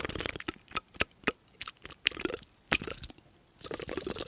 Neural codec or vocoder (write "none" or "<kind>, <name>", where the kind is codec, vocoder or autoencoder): vocoder, BigVGAN v2